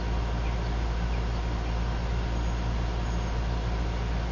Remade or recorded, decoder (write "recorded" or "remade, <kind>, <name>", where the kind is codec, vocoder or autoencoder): recorded